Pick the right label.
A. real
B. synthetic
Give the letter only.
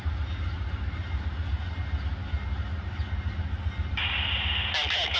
A